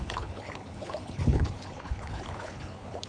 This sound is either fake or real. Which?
fake